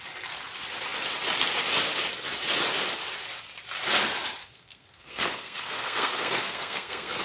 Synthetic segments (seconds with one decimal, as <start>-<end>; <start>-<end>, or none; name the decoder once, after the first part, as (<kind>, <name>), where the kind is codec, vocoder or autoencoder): 4.4-7.2 (codec, SNAC)